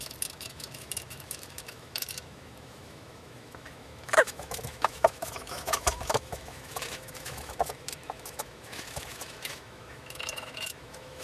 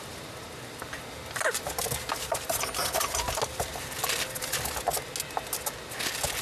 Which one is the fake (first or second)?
first